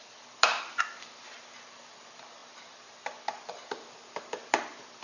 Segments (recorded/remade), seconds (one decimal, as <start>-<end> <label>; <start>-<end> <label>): 0.0-5.0 recorded